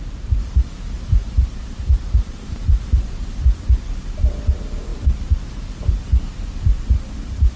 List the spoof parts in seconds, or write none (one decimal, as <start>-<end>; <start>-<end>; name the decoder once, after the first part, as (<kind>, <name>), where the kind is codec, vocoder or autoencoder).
1.2-2.6 (vocoder, BigVGAN v2)